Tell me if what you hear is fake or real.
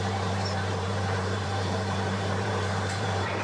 fake